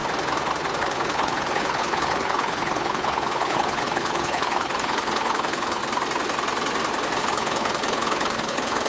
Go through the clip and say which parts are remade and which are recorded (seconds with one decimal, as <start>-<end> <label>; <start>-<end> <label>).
0.0-0.8 recorded; 0.8-5.8 remade; 5.8-7.2 recorded; 7.2-8.9 remade